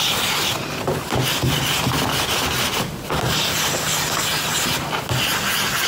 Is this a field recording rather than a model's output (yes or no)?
yes